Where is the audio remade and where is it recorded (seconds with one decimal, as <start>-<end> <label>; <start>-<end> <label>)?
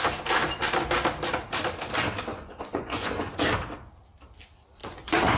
0.0-2.3 recorded; 2.3-3.4 remade; 3.4-4.8 recorded; 4.8-5.4 remade